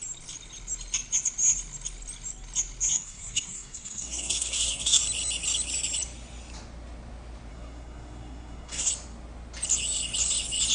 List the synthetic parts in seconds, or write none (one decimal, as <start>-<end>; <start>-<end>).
2.9-5.0; 7.5-8.9